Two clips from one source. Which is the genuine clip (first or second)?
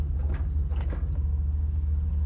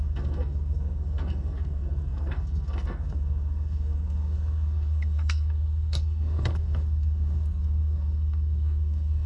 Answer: first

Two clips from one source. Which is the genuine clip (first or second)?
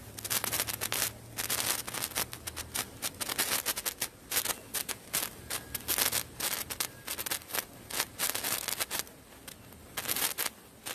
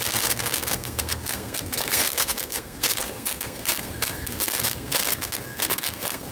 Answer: first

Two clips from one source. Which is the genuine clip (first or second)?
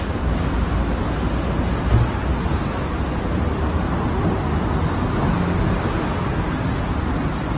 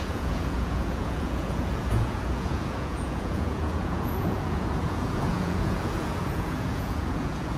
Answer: first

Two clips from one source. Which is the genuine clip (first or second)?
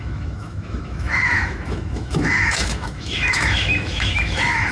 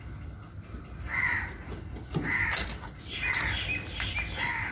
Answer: second